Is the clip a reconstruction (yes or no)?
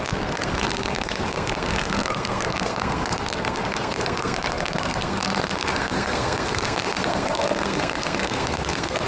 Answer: yes